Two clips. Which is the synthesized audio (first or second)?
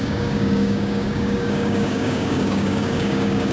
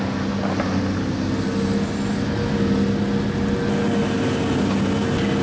first